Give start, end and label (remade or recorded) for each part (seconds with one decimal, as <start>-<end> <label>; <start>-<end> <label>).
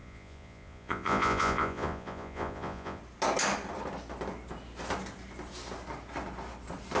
0.0-3.0 remade; 3.0-7.0 recorded